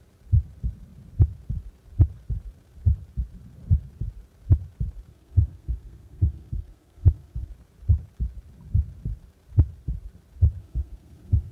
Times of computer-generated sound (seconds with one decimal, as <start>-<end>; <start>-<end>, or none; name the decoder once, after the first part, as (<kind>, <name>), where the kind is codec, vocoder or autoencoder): 5.1-7.5 (codec, SNAC); 10.6-11.5